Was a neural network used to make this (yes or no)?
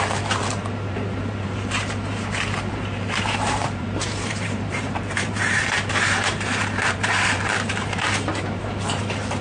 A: yes